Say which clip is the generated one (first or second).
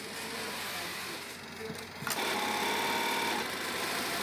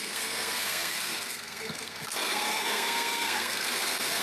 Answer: second